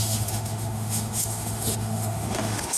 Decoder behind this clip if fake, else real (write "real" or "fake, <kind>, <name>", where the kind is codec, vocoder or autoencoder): fake, autoencoder, DAC-VAE